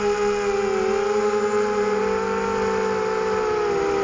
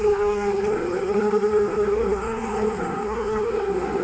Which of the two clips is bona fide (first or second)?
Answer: first